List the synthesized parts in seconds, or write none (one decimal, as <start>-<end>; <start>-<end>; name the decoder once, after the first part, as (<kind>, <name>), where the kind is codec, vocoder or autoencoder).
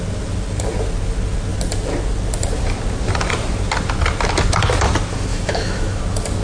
5.3-6.0 (autoencoder, DAC-VAE)